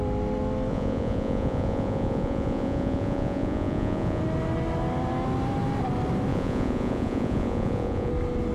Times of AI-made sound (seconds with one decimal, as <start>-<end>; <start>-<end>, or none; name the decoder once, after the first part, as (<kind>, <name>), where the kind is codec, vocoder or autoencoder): 0.7-4.2 (vocoder, Vocos); 6.3-8.1